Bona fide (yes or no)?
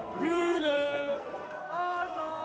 no